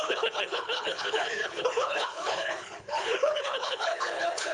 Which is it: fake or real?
fake